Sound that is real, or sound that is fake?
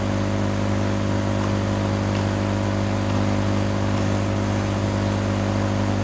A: real